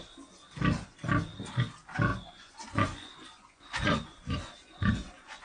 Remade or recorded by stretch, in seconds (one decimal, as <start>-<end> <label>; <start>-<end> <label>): 0.0-2.1 recorded; 2.1-5.4 remade